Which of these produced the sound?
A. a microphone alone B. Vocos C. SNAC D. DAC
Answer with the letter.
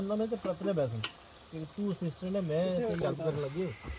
A